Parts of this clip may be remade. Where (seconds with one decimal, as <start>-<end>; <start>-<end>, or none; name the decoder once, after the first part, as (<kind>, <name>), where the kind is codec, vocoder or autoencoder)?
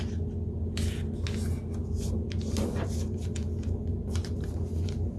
1.8-5.2 (vocoder, BigVGAN v2)